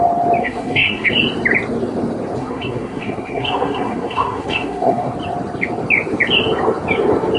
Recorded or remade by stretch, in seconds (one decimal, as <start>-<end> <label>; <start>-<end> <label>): 0.0-0.4 recorded; 0.4-1.1 remade; 1.1-2.4 recorded; 2.4-5.1 remade; 5.1-7.4 recorded